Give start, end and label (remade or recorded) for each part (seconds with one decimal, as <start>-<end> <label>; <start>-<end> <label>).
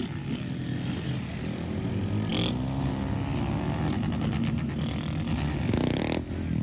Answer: 0.0-6.6 recorded